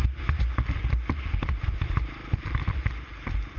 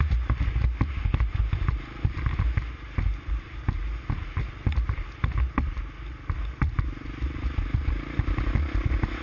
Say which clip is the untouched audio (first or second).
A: second